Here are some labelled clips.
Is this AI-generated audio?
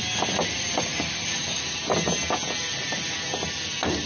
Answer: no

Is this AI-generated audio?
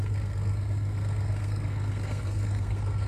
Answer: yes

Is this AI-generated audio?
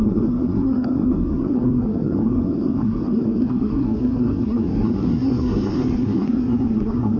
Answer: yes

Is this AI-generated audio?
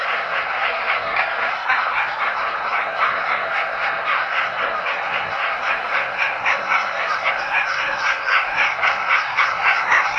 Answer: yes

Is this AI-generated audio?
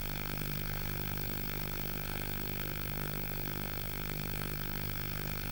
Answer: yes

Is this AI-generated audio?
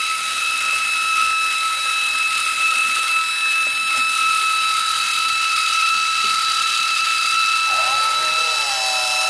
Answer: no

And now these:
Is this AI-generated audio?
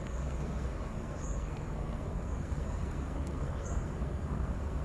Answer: yes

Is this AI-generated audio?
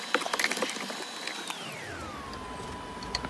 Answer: no